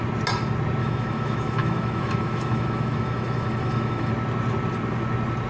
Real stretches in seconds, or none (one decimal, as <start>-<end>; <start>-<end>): 0.0-0.8; 4.1-5.5